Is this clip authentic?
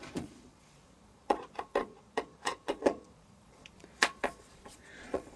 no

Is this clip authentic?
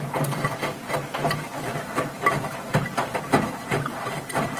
no